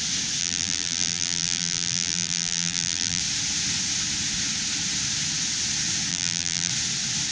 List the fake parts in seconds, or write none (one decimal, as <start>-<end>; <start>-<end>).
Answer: 0.4-3.2; 6.1-6.7